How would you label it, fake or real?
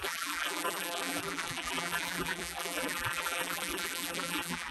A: fake